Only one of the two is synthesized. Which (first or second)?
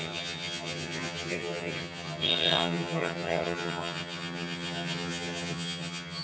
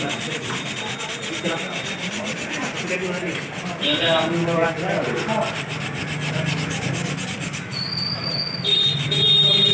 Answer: first